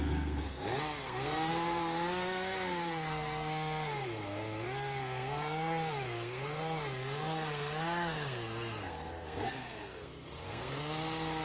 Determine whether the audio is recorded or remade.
remade